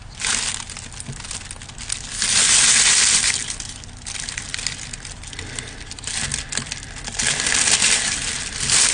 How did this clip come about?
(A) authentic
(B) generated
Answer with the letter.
A